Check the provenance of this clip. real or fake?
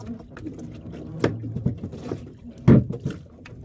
real